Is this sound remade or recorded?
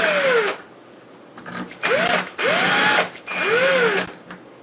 recorded